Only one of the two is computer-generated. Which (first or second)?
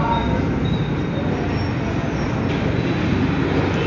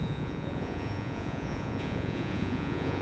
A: second